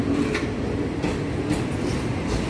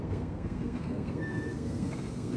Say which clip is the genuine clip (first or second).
first